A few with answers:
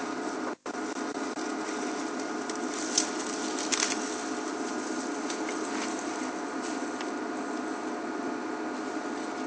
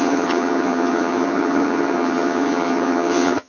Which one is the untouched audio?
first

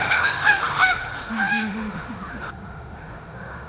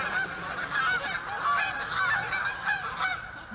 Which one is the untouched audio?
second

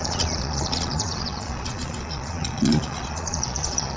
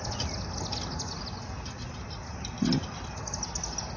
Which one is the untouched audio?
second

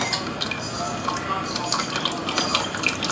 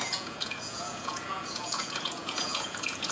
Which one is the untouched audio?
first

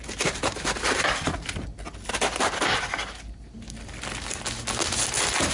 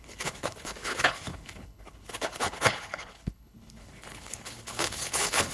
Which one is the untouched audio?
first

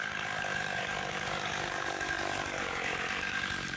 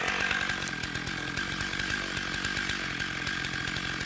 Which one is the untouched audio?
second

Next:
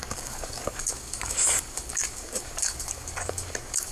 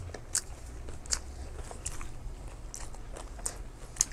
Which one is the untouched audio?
second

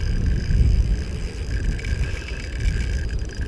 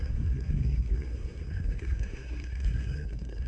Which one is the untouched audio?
first